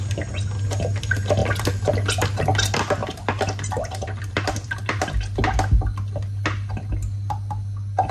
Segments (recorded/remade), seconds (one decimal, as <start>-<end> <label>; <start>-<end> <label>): 0.0-3.0 recorded; 3.0-5.0 remade; 5.0-8.1 recorded